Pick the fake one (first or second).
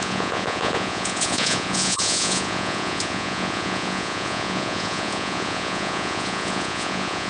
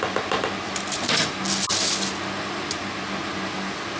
first